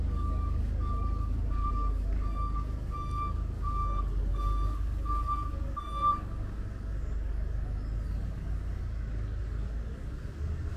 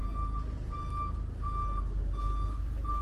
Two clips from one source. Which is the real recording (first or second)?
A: second